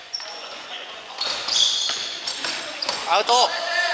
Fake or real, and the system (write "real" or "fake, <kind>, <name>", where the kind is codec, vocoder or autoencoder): fake, vocoder, Vocos